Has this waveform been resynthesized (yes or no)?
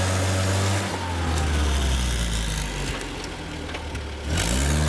no